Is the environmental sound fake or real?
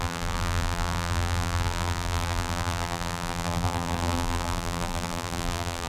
fake